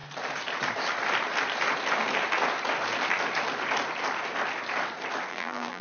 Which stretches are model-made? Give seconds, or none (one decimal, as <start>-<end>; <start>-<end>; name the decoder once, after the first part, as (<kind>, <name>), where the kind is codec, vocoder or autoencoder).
5.3-5.8 (vocoder, BigVGAN v2)